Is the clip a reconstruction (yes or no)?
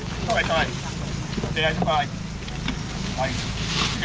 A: no